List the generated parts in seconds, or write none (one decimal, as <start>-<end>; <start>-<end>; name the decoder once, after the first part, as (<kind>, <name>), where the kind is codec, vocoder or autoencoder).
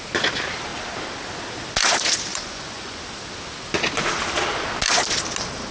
2.3-3.0 (vocoder, Vocos)